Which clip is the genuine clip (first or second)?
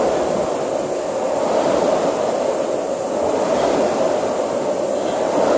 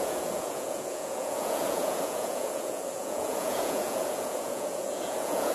first